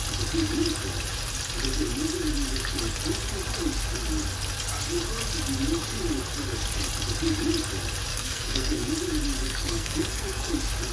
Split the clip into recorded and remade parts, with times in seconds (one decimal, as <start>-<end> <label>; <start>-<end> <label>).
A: 0.0-8.1 recorded; 8.1-8.9 remade; 8.9-9.4 recorded; 9.4-10.5 remade; 10.5-10.9 recorded